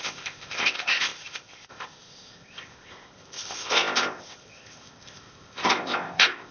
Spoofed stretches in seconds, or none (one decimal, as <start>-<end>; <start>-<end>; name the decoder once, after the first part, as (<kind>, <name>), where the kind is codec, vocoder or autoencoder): 0.0-6.5 (codec, ZipCodec)